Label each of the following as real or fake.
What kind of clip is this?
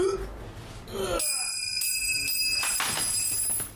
real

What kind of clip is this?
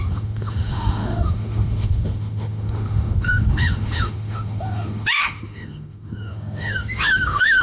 fake